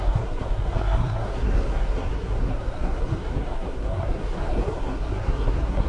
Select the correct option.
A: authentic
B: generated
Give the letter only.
B